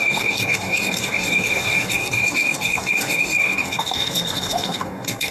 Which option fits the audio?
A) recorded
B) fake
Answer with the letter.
B